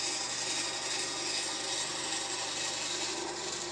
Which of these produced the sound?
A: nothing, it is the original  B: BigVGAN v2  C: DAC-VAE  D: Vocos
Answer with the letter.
A